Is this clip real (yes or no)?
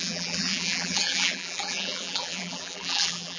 no